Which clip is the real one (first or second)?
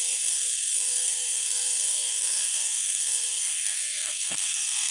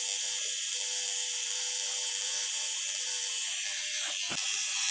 second